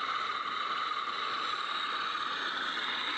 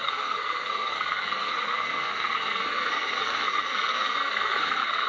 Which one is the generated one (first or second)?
second